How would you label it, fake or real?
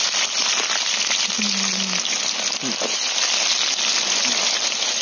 real